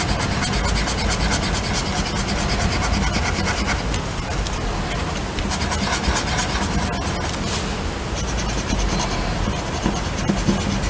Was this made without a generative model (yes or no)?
yes